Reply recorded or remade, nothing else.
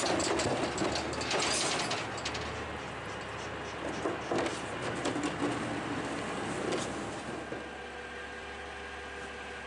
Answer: recorded